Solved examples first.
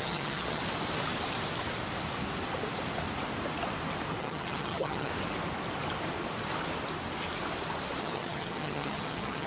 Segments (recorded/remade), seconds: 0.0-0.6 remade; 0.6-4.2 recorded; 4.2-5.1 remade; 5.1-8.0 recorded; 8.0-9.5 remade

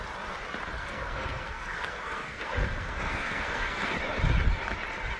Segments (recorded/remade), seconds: 0.0-0.8 recorded; 0.8-3.9 remade; 3.9-5.2 recorded

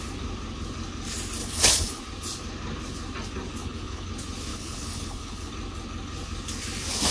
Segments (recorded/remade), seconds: 0.0-1.4 recorded; 1.4-2.0 remade; 2.0-3.6 recorded; 3.6-4.1 remade; 4.1-4.5 recorded; 4.5-5.5 remade; 5.5-7.1 recorded

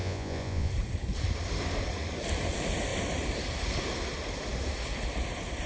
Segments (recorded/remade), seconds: 0.0-0.7 remade; 0.7-5.7 recorded

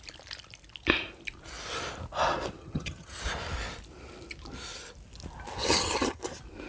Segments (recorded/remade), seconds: 0.0-2.6 recorded; 2.6-3.2 remade; 3.2-5.6 recorded; 5.6-6.2 remade; 6.2-6.7 recorded

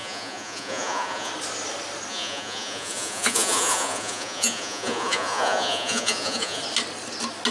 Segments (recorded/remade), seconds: 0.0-1.3 remade; 1.3-2.1 recorded; 2.1-6.6 remade; 6.6-7.5 recorded